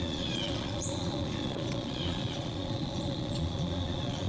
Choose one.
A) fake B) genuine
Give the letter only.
A